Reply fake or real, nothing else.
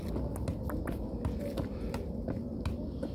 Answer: real